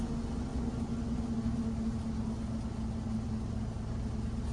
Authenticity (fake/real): real